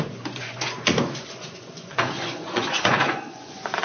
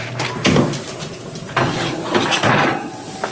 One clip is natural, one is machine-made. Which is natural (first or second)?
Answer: second